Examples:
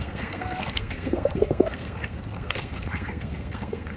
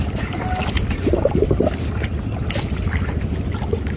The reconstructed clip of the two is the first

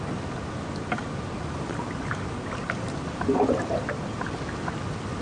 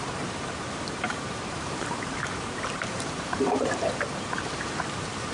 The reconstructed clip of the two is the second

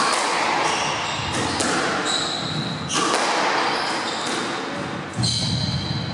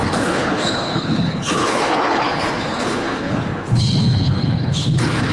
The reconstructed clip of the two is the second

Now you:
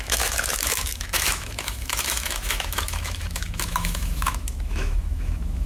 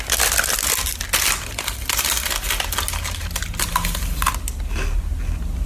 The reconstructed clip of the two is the first